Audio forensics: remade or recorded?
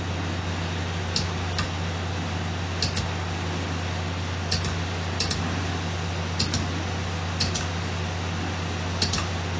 recorded